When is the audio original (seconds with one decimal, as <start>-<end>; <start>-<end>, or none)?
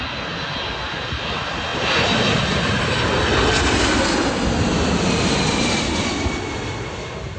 0.0-7.4